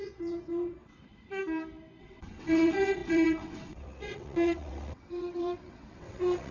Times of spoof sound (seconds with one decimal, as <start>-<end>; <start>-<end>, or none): 0.0-1.4; 2.0-6.5